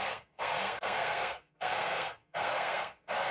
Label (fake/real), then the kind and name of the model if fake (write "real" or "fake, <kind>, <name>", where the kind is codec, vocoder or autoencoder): fake, codec, SNAC